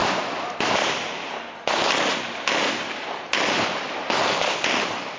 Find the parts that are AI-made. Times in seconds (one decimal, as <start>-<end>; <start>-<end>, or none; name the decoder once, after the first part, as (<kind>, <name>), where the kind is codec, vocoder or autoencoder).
none